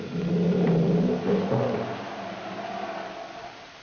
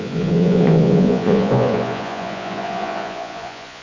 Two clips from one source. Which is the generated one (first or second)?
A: second